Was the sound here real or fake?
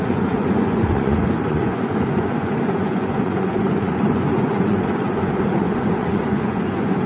fake